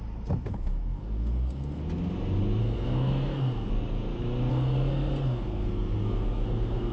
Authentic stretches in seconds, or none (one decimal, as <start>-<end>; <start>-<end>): 0.0-0.5; 1.8-2.6; 3.7-4.5